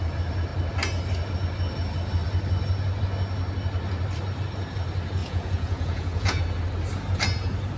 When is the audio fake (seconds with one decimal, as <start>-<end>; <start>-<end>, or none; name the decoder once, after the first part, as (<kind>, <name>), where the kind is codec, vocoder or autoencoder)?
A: 5.2-6.4 (vocoder, Vocos)